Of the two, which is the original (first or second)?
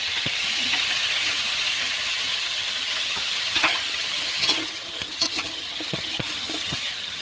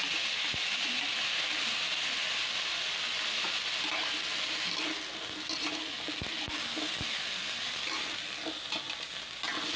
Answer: second